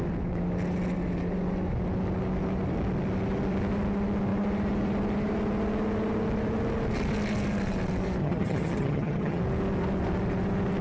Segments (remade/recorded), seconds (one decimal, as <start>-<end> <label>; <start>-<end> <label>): 0.0-8.2 recorded; 8.2-9.4 remade; 9.4-10.8 recorded